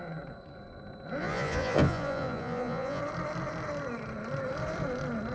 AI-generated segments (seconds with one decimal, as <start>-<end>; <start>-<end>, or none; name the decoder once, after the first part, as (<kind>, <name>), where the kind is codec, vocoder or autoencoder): 1.2-3.0 (vocoder, Vocos)